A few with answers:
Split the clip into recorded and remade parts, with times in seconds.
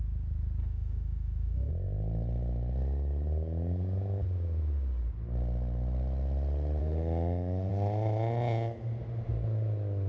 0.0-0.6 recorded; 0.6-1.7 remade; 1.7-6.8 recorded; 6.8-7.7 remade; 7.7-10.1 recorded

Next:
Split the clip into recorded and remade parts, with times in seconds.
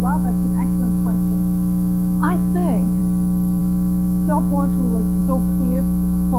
0.0-3.0 remade; 3.0-3.6 recorded; 3.6-6.4 remade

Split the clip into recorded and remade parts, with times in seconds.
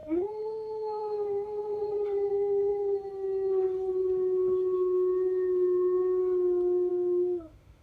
0.0-1.8 remade; 1.8-2.3 recorded; 2.3-2.7 remade; 2.7-6.9 recorded; 6.9-7.8 remade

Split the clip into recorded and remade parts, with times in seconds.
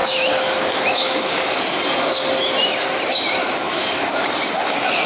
0.0-1.4 remade; 1.4-3.4 recorded; 3.4-4.3 remade; 4.3-5.1 recorded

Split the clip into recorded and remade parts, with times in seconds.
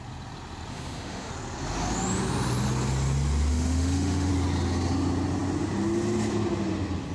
0.0-0.7 recorded; 0.7-1.3 remade; 1.3-3.5 recorded; 3.5-4.3 remade; 4.3-7.1 recorded